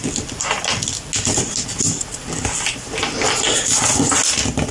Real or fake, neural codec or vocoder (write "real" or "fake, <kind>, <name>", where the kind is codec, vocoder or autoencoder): real